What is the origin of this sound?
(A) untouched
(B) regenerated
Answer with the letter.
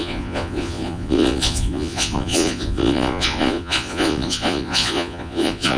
B